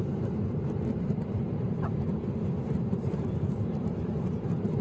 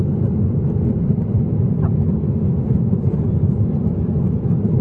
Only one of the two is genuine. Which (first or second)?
second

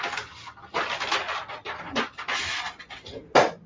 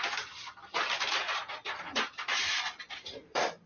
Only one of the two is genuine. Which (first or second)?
first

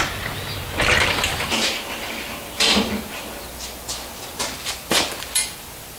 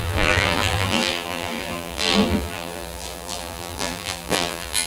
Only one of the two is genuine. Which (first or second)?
first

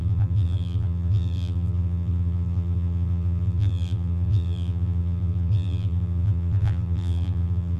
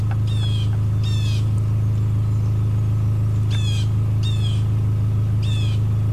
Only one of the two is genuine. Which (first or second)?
second